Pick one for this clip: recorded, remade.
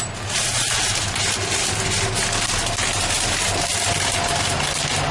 recorded